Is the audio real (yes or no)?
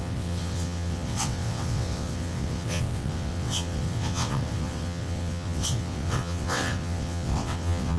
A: no